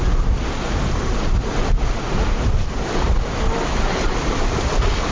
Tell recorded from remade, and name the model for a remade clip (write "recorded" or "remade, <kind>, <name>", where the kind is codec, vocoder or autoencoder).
recorded